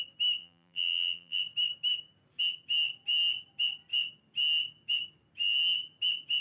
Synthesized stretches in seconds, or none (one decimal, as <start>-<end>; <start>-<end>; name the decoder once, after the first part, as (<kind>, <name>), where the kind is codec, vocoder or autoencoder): 0.4-1.4 (vocoder, BigVGAN v2)